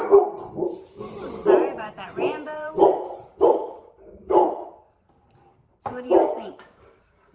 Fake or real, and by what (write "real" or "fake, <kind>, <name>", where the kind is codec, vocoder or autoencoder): fake, vocoder, BigVGAN v2